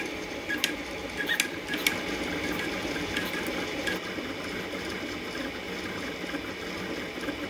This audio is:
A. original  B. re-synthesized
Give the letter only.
A